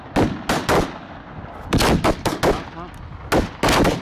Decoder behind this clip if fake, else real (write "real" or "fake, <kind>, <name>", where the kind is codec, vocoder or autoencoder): real